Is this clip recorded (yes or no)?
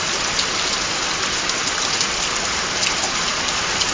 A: yes